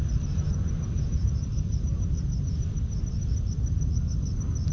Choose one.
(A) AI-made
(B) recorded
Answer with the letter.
B